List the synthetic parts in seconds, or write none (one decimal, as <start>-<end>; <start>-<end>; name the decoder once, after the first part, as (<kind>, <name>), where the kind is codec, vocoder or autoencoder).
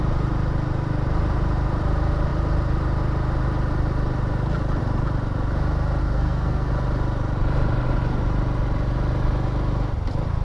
6.0-6.7 (codec, SNAC)